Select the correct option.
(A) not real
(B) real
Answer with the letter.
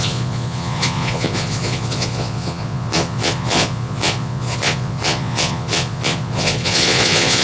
A